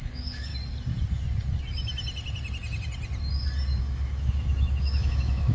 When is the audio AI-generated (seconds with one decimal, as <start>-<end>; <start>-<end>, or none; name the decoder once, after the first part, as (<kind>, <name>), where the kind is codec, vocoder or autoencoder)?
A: 0.0-0.5 (autoencoder, DAC-VAE); 3.8-5.5